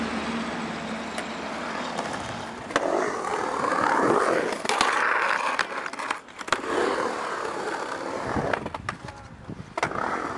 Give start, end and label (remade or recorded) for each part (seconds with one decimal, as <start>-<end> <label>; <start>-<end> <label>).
0.0-10.4 recorded